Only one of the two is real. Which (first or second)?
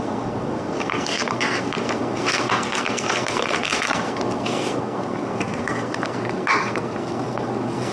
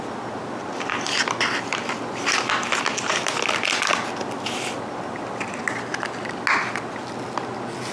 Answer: second